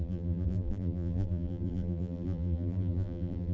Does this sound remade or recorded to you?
remade